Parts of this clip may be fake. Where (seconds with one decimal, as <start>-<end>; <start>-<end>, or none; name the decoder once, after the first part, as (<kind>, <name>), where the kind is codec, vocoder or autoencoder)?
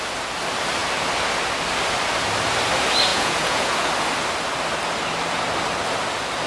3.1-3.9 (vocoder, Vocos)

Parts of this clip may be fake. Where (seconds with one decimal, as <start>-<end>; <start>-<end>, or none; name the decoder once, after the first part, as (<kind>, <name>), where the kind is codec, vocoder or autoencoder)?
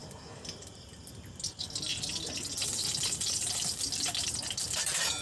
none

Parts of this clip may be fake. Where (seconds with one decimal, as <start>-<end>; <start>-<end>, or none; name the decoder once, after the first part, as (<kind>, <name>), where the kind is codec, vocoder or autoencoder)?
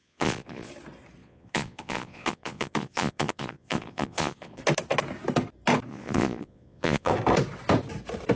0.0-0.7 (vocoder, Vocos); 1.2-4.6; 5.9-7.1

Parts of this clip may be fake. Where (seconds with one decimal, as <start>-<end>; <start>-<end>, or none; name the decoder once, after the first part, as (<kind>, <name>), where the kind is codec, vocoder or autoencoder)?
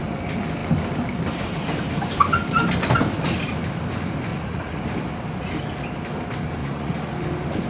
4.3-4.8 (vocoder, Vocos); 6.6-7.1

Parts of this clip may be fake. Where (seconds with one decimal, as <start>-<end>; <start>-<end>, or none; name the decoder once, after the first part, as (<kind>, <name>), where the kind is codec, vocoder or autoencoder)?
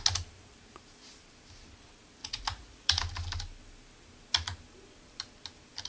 2.2-3.0 (vocoder, Vocos)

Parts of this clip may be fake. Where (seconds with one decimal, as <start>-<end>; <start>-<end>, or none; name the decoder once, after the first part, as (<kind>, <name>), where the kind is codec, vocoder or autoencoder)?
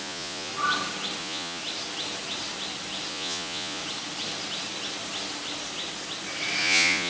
0.0-0.5 (vocoder, Vocos); 1.2-1.6; 3.1-3.8; 6.6-7.1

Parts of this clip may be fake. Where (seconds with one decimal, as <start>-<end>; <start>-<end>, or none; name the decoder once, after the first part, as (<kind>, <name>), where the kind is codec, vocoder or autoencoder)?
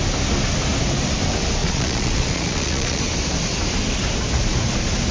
1.6-3.0 (vocoder, Vocos)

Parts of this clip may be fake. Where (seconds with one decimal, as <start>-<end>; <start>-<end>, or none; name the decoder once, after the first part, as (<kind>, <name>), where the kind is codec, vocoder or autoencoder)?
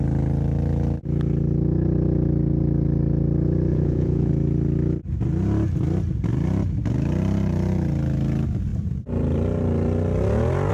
3.7-4.3 (vocoder, Vocos)